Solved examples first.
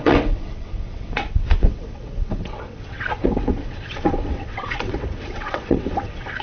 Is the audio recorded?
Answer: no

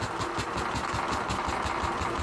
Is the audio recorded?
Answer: yes